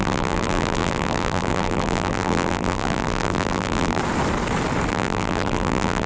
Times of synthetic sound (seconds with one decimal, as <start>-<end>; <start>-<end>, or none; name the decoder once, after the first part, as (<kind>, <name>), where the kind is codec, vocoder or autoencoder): 0.0-4.0 (vocoder, BigVGAN v2); 4.9-6.1